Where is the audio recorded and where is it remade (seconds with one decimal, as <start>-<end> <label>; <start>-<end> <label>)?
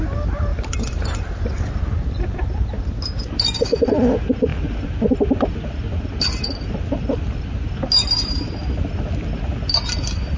0.0-0.5 recorded; 0.5-2.7 remade; 2.7-10.4 recorded